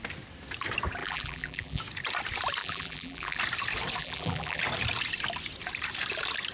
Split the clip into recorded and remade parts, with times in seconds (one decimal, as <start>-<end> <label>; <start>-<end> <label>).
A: 0.0-1.0 recorded; 1.0-1.8 remade; 1.8-2.6 recorded; 2.6-3.4 remade; 3.4-4.0 recorded; 4.0-4.6 remade; 4.6-6.5 recorded